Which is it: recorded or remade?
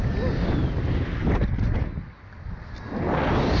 recorded